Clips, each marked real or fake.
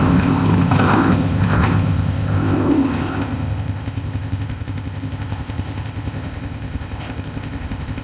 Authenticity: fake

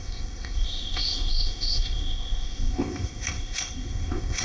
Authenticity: fake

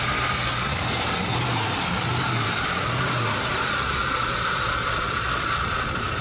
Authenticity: real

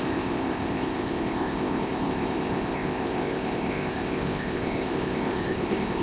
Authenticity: fake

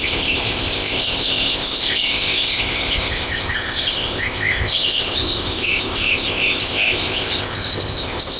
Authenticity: fake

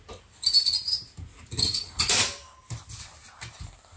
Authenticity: real